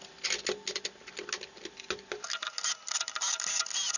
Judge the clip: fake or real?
real